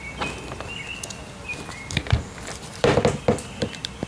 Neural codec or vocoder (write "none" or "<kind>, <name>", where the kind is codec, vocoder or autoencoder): none